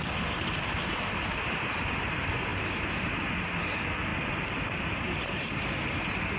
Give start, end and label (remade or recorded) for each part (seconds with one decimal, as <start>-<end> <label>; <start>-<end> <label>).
0.0-2.5 recorded; 2.5-3.3 remade; 3.3-4.1 recorded; 4.1-6.0 remade; 6.0-6.4 recorded